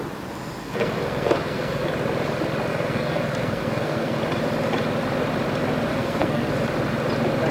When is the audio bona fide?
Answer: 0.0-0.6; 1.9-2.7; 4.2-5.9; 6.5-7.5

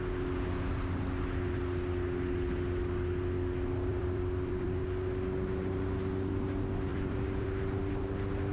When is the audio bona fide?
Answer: 0.0-3.9; 4.8-6.9; 7.9-8.5

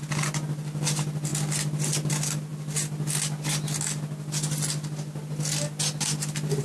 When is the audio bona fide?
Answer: 1.3-2.1; 2.5-6.6

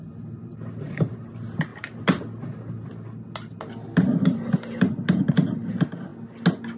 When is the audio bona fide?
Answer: 0.0-6.8

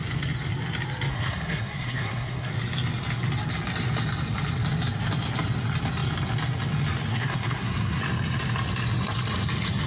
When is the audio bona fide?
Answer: 0.0-1.1; 2.5-7.1; 8.0-9.9

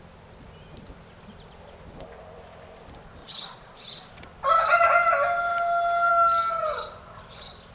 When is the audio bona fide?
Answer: 0.0-3.2; 4.1-5.5; 6.1-7.7

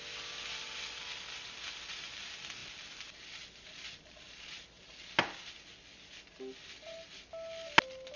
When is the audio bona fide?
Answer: 0.0-8.2

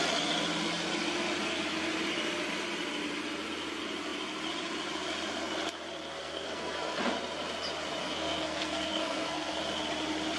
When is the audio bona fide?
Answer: 0.0-6.2; 7.0-8.0; 9.6-10.4